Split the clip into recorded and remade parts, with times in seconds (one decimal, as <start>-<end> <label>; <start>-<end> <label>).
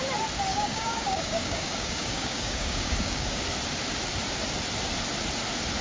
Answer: 0.0-0.5 recorded; 0.5-3.4 remade; 3.4-5.8 recorded